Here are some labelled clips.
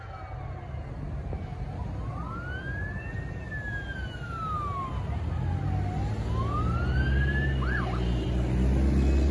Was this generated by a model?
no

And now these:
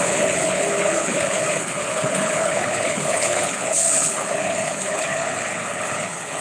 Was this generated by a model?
yes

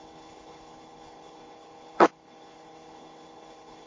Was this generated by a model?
yes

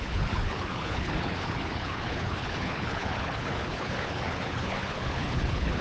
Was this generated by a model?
yes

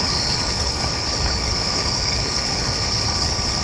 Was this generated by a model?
yes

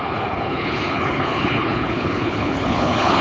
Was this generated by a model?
yes